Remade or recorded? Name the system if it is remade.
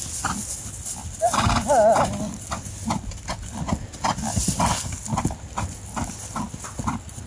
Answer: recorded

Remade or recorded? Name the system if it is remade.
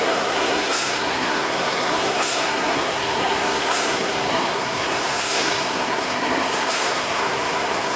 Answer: remade, codec, SNAC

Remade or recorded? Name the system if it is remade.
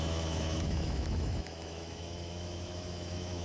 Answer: remade, autoencoder, DAC-VAE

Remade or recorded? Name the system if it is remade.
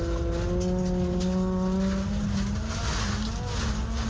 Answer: recorded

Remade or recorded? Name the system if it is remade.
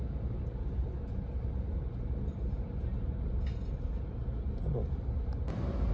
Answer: recorded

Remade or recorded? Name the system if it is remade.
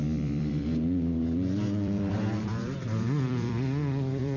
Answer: remade, vocoder, BigVGAN v2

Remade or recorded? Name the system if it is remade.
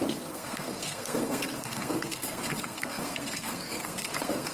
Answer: remade, codec, SNAC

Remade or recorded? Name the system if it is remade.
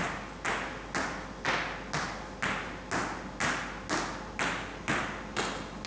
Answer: recorded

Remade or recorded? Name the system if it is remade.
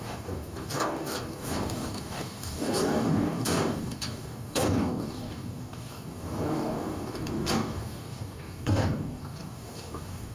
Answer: remade, codec, DAC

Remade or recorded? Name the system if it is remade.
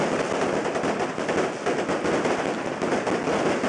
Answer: recorded